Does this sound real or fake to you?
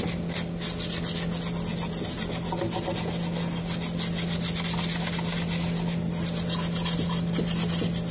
real